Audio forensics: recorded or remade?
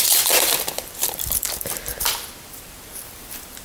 remade